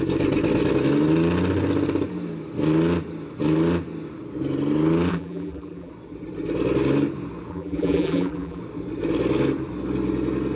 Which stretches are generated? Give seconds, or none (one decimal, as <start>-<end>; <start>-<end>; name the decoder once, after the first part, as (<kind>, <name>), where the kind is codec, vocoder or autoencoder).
5.1-5.9 (vocoder, BigVGAN v2); 7.5-8.6